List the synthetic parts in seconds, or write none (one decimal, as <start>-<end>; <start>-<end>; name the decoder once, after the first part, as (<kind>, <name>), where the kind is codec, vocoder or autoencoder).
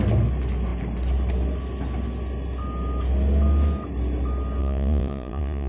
4.6-5.7 (vocoder, WaveNeXt)